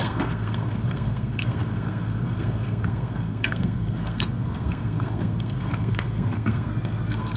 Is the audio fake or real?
fake